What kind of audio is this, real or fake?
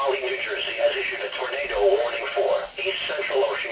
real